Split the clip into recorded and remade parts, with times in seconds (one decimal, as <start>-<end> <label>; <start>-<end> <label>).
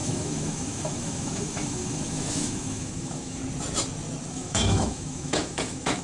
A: 0.0-3.4 remade; 3.4-4.3 recorded; 4.3-6.0 remade